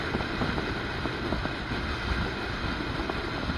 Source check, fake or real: real